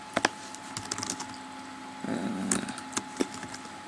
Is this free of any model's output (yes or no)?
yes